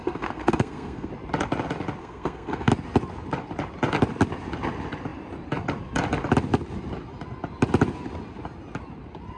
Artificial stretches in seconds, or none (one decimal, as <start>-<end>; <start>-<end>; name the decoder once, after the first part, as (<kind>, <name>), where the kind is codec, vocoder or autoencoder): 0.0-1.1 (codec, SNAC); 2.0-2.7